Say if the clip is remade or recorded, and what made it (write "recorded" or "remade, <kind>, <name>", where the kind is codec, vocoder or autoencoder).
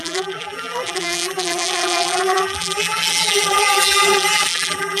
remade, vocoder, BigVGAN v2